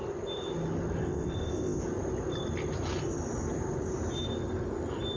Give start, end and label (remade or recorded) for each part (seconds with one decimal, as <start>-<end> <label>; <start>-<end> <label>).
0.0-1.0 recorded; 1.0-1.8 remade; 1.8-5.2 recorded

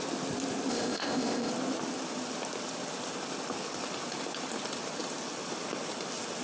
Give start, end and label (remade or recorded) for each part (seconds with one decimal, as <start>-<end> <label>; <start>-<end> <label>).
0.0-0.7 recorded; 0.7-1.5 remade; 1.5-6.4 recorded